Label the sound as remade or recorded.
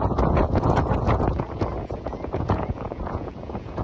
remade